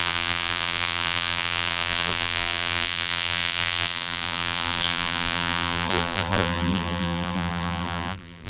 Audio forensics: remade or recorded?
remade